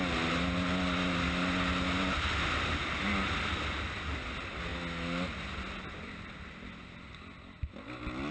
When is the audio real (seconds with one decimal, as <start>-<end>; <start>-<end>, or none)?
0.0-8.3